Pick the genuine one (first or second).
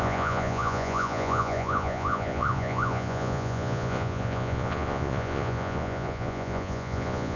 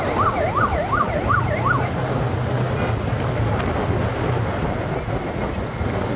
second